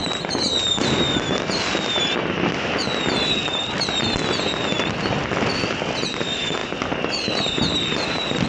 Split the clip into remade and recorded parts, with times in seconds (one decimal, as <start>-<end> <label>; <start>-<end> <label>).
0.0-8.5 recorded

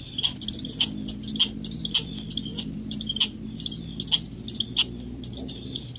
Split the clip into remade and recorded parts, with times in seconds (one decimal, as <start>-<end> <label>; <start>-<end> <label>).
0.0-2.5 recorded; 2.5-3.1 remade; 3.1-6.0 recorded

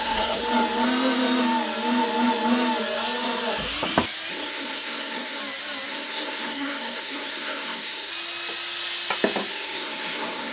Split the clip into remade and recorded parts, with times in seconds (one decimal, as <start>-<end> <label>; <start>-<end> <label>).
0.0-0.4 remade; 0.4-4.3 recorded; 4.3-5.4 remade; 5.4-5.9 recorded; 5.9-8.1 remade; 8.1-9.5 recorded; 9.5-10.5 remade

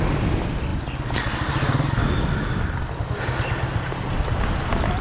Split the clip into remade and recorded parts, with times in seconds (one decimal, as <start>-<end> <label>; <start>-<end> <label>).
0.0-5.0 recorded

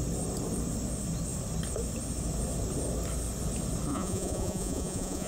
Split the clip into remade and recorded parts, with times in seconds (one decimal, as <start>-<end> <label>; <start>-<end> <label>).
0.0-3.9 recorded; 3.9-5.3 remade

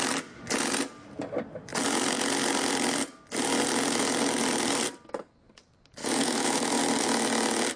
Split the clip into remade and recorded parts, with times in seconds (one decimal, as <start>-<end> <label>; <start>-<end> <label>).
0.0-6.0 recorded; 6.0-6.8 remade; 6.8-7.8 recorded